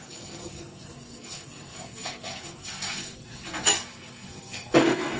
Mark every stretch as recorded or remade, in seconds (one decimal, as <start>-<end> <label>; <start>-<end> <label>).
0.0-5.2 remade